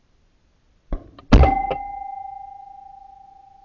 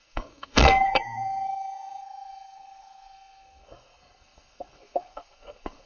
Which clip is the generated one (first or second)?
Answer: second